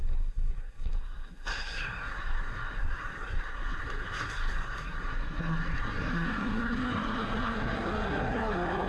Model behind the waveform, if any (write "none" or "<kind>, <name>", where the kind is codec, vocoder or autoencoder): codec, SNAC